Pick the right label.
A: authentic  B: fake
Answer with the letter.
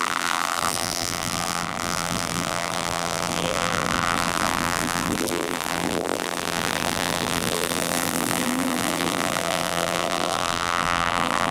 B